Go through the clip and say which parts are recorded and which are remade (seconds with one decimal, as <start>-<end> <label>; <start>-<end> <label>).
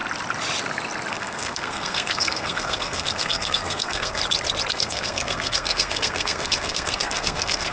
0.0-1.1 recorded; 1.1-4.2 remade; 4.2-4.7 recorded; 4.7-7.7 remade